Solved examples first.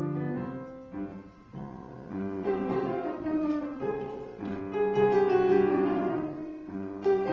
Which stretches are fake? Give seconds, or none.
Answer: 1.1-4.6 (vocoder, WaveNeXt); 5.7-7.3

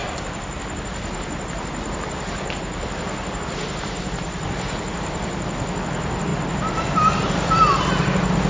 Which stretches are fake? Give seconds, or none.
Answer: none

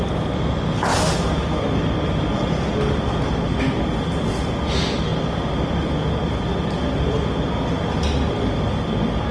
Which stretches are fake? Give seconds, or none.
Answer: none

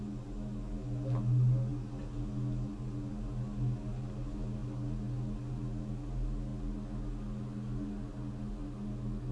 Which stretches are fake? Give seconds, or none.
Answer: none

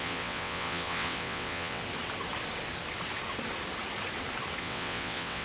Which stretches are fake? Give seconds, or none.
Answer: 0.0-1.8 (vocoder, WaveNeXt); 4.6-5.4

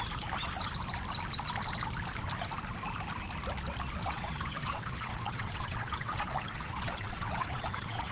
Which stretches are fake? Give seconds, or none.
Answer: 4.0-8.1 (vocoder, WaveNeXt)

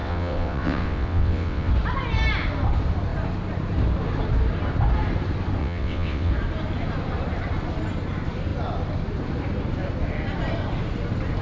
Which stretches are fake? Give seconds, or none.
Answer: 0.0-1.7 (vocoder, WaveNeXt); 5.6-6.3

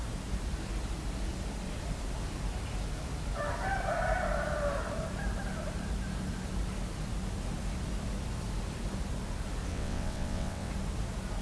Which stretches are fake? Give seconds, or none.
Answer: 9.7-10.7 (vocoder, WaveNeXt)